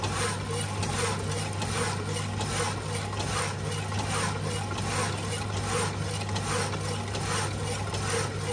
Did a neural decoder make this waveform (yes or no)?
no